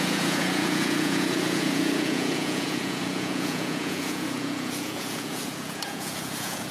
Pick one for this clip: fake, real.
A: fake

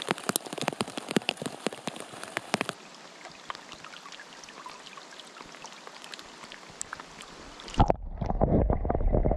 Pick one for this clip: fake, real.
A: real